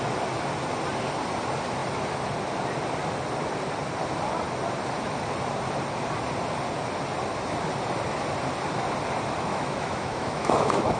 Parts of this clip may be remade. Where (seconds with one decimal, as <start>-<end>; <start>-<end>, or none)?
9.5-11.0